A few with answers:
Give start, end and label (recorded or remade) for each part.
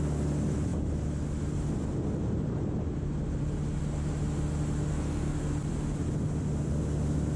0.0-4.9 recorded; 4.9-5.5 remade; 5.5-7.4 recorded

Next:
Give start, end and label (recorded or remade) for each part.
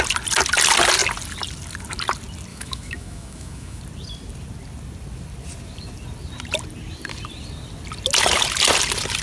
0.0-2.5 recorded; 2.5-3.8 remade; 3.8-9.2 recorded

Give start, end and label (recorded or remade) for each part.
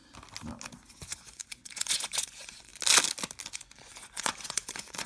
0.0-0.9 recorded; 0.9-2.7 remade; 2.7-3.5 recorded; 3.5-5.1 remade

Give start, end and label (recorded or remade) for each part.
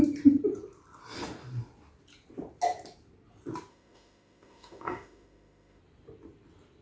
0.0-3.7 recorded; 3.7-5.8 remade; 5.8-6.8 recorded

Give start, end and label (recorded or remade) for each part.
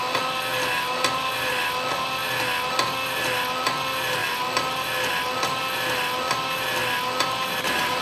0.0-0.5 recorded; 0.5-1.5 remade; 1.5-8.0 recorded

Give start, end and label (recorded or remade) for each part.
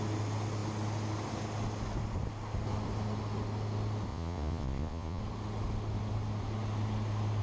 0.0-4.1 recorded; 4.1-5.2 remade; 5.2-7.4 recorded